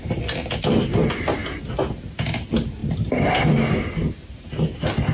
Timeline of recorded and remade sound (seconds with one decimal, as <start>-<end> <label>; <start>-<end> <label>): 0.0-5.1 recorded